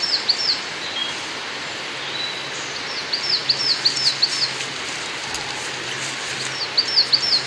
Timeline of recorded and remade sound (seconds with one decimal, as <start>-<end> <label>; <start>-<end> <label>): 0.0-1.0 recorded; 1.0-2.1 remade; 2.1-5.2 recorded; 5.2-5.7 remade; 5.7-7.5 recorded